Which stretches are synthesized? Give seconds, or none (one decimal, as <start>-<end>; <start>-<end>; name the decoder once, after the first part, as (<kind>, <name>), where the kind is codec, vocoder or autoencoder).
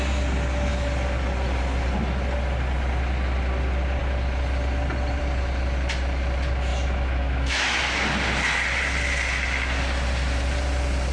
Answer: 6.7-7.8 (autoencoder, DAC-VAE)